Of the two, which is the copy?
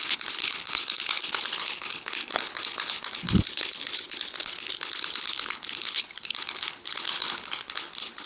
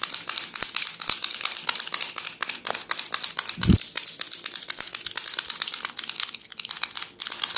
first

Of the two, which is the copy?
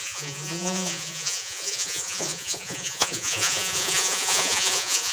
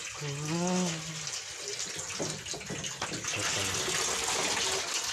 first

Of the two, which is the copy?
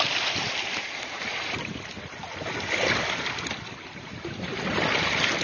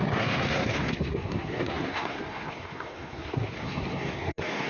second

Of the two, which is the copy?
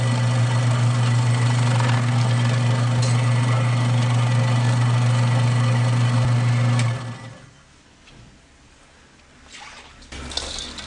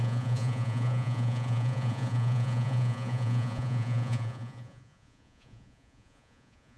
second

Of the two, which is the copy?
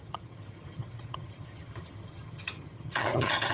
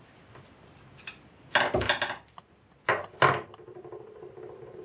first